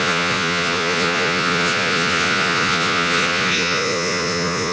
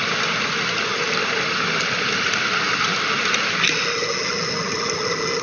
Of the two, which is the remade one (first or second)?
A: first